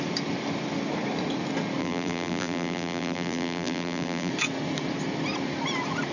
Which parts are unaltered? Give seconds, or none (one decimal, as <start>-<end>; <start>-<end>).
0.0-1.8; 4.3-6.1